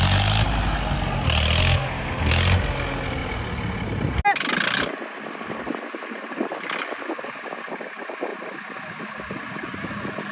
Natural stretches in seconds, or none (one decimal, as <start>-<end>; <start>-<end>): 0.0-1.6; 2.3-10.3